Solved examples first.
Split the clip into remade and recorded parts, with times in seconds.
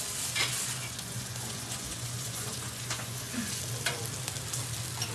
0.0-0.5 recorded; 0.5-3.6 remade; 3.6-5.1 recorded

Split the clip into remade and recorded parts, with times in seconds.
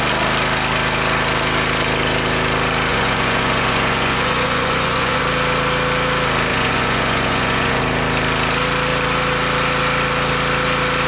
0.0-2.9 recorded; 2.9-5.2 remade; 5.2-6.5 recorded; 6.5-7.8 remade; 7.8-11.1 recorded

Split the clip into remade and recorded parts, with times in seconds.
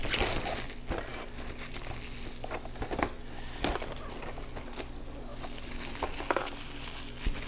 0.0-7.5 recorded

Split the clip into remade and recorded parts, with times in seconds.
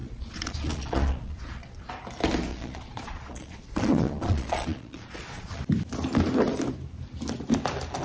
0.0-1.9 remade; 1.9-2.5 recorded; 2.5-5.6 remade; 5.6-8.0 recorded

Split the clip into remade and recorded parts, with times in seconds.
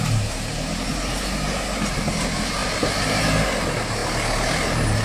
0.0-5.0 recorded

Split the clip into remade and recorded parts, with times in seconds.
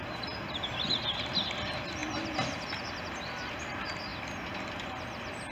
0.0-5.5 recorded